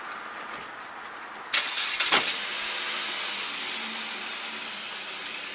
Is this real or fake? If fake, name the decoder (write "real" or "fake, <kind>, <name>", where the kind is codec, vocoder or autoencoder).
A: real